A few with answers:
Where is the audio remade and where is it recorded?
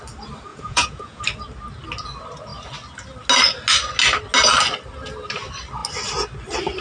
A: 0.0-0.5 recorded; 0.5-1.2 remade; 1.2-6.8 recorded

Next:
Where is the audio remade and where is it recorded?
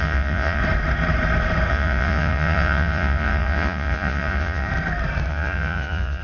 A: 0.0-0.6 remade; 0.6-1.7 recorded; 1.7-4.7 remade; 4.7-5.3 recorded; 5.3-6.2 remade